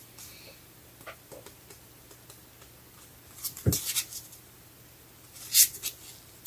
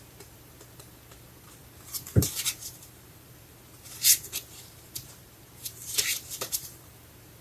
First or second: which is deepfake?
second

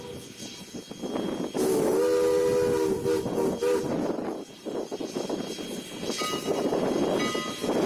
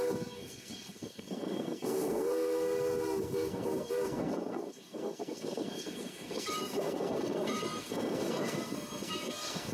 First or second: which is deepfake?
second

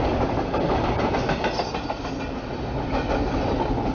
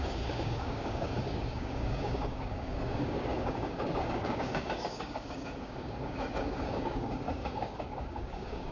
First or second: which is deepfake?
second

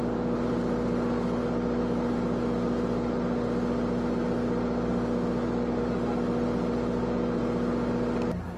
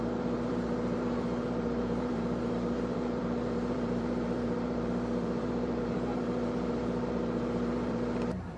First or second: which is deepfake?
second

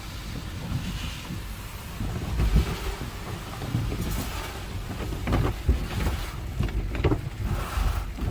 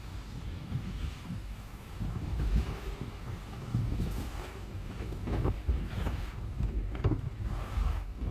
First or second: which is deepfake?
second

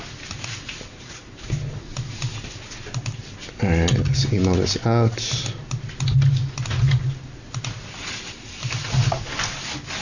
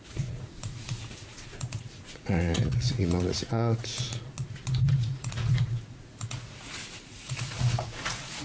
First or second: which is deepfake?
second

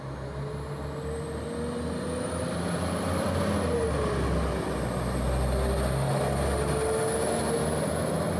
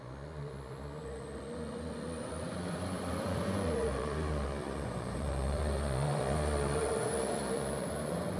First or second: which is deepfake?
second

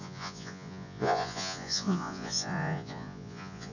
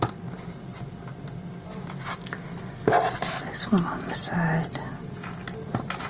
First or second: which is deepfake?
first